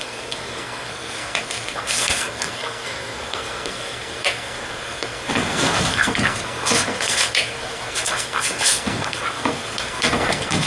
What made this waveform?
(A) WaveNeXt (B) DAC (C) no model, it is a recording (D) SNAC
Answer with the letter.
D